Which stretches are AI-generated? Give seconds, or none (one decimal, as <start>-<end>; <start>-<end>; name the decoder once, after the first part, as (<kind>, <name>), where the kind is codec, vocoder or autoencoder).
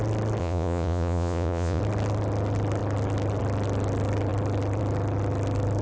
0.4-1.8 (vocoder, Vocos)